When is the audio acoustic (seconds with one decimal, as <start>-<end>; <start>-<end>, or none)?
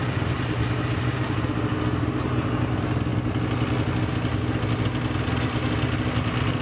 0.0-6.6